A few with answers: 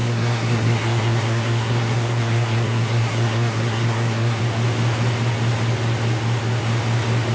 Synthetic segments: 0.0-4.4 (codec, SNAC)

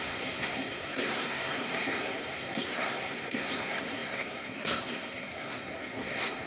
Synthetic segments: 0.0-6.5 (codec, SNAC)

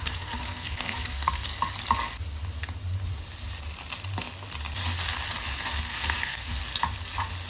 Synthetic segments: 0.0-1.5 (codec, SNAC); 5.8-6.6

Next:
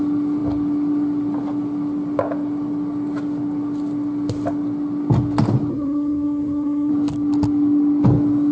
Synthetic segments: 5.7-6.9 (codec, SNAC)